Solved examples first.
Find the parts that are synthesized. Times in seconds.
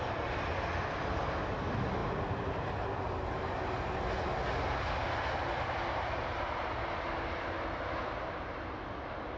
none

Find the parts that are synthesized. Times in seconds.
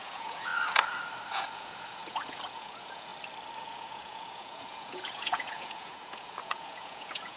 0.0-0.5; 1.3-3.1; 3.6-7.4